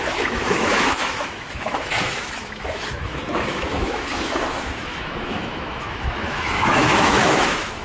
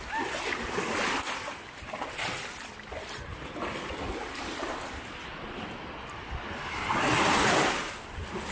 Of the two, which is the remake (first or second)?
first